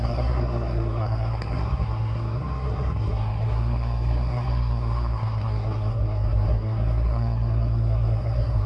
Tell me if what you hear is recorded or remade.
remade